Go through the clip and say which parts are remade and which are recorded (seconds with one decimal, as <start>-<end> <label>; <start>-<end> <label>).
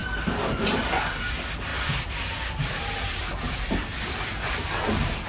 0.0-1.7 recorded; 1.7-5.3 remade